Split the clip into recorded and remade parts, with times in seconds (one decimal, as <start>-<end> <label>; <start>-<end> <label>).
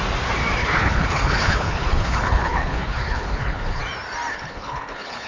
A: 0.0-0.6 recorded; 0.6-3.8 remade; 3.8-4.3 recorded; 4.3-5.3 remade